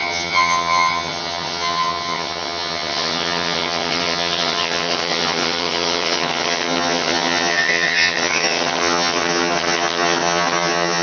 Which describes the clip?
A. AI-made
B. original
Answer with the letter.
A